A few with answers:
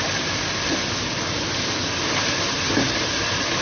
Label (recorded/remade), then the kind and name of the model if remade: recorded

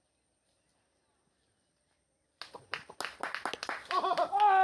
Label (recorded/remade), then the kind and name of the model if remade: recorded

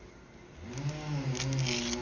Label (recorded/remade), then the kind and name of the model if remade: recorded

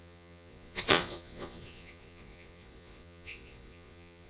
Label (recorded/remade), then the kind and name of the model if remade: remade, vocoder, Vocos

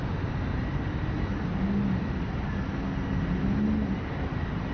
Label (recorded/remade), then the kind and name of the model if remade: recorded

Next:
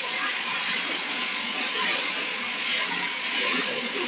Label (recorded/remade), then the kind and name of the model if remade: remade, vocoder, Vocos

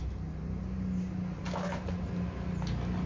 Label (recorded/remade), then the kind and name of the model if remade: recorded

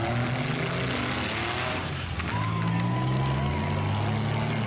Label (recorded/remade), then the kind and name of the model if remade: recorded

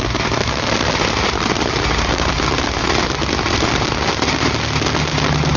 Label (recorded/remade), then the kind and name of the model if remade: recorded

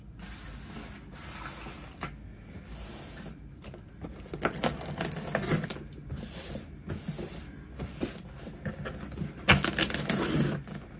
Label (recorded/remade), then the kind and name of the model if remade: recorded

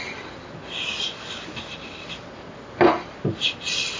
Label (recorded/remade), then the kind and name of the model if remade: recorded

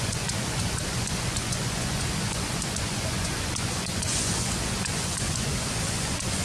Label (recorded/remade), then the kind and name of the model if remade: remade, vocoder, Vocos